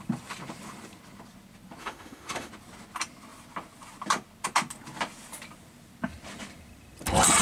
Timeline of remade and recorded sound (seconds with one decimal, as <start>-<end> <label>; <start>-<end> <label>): 0.0-1.8 recorded; 1.8-2.5 remade; 2.5-7.4 recorded